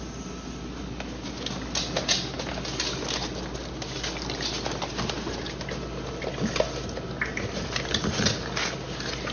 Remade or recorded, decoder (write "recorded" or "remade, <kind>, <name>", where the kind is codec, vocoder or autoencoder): recorded